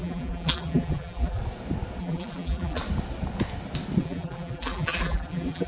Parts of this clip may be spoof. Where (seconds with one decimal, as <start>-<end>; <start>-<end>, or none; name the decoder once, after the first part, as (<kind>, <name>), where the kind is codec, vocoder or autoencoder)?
0.0-1.4 (vocoder, BigVGAN v2); 2.0-2.8; 4.0-5.7